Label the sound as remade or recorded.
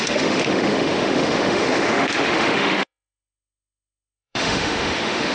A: remade